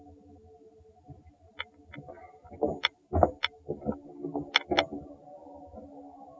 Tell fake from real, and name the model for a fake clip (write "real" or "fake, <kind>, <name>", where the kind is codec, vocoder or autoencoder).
real